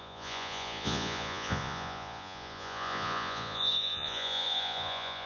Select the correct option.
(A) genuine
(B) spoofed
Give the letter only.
B